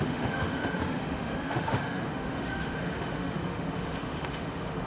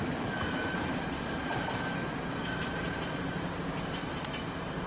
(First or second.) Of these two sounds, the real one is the second